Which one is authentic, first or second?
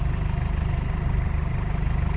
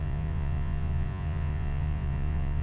first